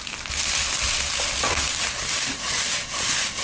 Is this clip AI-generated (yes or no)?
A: no